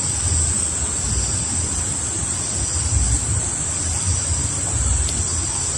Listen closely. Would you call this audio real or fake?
real